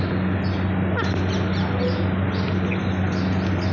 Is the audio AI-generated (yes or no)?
no